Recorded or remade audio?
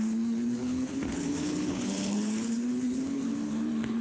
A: remade